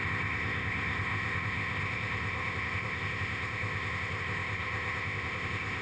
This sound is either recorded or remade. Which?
remade